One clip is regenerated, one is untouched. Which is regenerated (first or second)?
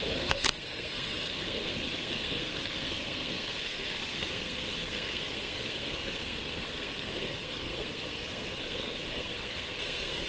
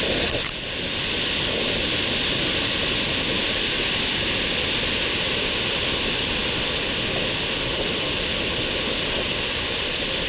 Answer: first